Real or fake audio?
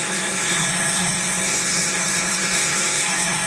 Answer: fake